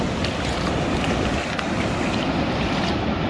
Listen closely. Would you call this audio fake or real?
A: real